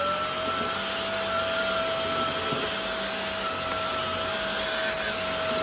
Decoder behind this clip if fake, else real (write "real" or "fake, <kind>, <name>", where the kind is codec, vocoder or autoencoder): real